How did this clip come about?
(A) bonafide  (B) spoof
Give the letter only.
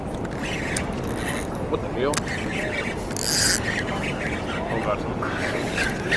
A